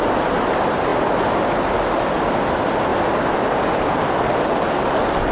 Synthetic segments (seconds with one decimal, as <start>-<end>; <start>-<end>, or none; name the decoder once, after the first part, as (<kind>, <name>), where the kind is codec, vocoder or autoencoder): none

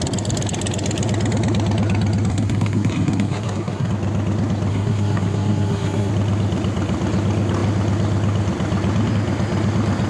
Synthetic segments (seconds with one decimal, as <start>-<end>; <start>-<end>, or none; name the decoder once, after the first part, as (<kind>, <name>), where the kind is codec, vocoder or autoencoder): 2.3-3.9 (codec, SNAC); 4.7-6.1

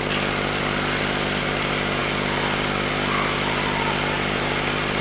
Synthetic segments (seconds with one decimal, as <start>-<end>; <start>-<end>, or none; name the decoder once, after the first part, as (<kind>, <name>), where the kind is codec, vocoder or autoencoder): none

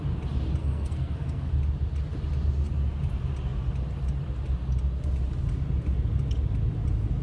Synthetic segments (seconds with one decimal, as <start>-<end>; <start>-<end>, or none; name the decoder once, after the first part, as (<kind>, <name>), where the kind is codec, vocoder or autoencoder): 0.6-1.5 (codec, SNAC)